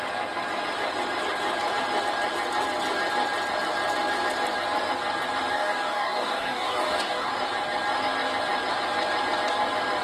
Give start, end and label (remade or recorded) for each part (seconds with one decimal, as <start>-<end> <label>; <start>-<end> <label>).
0.0-5.5 recorded; 5.5-7.3 remade; 7.3-10.0 recorded